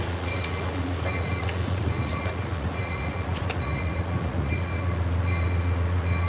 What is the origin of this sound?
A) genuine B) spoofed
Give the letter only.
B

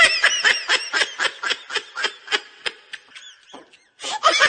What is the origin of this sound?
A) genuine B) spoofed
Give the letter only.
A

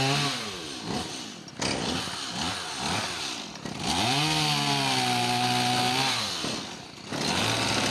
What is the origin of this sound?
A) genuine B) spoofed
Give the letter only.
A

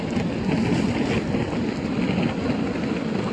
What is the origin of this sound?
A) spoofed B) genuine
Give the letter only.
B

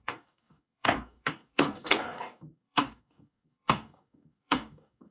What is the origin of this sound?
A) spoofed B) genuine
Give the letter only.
A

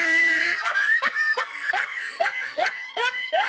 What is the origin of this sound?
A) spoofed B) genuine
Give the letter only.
A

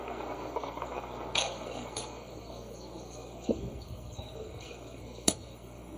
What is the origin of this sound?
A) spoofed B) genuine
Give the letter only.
A